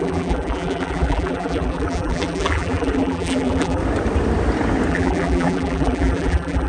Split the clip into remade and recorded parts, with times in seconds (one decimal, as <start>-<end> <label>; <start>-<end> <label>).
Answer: 0.0-3.8 remade; 3.8-4.9 recorded; 4.9-6.7 remade